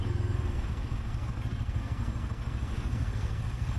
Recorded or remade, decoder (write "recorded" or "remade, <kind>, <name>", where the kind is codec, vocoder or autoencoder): remade, codec, SNAC